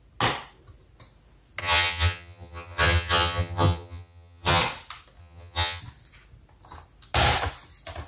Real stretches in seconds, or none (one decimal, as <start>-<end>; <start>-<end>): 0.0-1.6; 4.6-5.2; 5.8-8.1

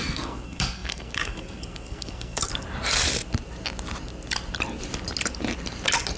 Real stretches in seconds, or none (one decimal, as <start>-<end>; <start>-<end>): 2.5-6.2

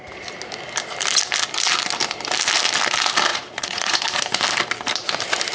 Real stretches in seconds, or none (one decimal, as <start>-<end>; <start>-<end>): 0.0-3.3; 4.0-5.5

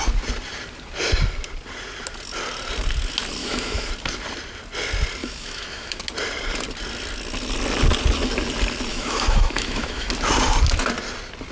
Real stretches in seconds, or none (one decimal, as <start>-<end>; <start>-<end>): 0.0-3.4; 3.9-5.2; 6.0-8.9; 10.1-11.5

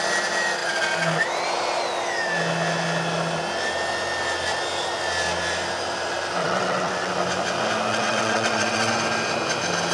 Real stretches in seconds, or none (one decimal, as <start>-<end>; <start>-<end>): 0.0-6.4; 7.1-7.9; 8.9-9.9

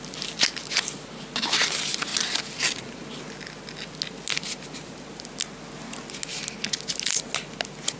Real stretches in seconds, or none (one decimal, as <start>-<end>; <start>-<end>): 0.0-8.0

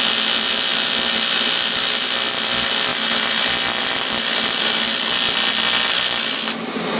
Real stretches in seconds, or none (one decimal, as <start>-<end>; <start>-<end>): 0.0-7.0

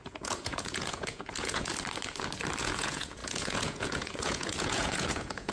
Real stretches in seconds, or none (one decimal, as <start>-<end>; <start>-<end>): 1.7-2.6